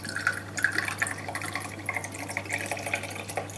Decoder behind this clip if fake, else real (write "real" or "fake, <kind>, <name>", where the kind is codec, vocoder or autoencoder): real